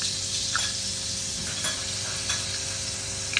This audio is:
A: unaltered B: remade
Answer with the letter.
A